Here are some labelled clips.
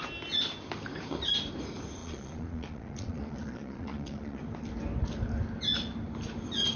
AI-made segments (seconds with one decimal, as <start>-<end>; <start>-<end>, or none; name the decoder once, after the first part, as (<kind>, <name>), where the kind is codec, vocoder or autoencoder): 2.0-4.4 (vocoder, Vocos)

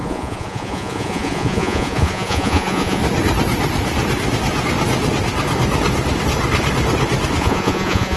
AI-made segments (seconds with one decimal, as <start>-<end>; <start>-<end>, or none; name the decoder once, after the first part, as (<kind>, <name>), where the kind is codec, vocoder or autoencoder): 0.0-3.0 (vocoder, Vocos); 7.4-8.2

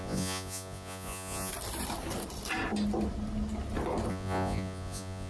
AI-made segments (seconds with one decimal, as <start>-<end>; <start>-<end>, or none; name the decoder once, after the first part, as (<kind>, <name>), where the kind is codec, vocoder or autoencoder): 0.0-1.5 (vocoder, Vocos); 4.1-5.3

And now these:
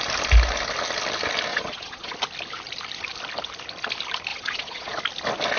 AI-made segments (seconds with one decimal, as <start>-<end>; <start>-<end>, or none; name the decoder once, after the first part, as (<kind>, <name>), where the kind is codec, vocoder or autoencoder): 1.5-2.1 (vocoder, Vocos); 4.3-5.0

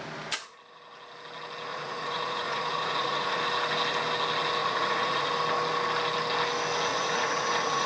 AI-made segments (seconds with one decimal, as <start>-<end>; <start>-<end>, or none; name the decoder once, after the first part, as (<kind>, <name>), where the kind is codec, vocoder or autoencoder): 1.7-3.4 (vocoder, Vocos); 4.6-5.3; 6.9-7.9